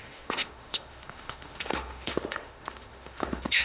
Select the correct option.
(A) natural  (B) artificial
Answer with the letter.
B